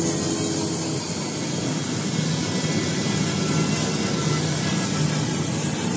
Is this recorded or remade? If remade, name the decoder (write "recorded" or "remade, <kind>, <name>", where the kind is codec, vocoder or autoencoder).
recorded